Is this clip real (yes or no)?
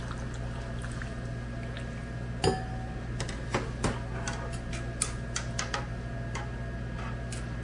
yes